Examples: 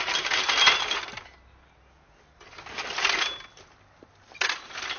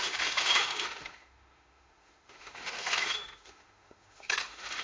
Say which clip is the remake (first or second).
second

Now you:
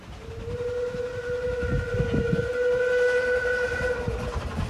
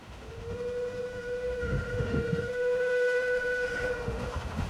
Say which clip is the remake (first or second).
second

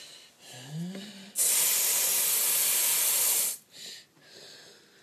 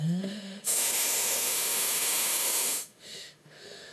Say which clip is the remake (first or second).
second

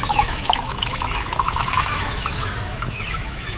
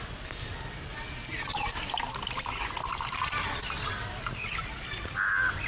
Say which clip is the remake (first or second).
first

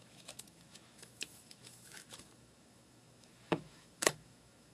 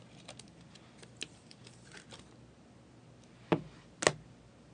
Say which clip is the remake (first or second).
first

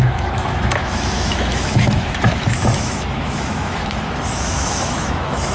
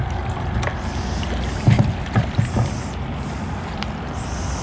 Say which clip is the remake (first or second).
first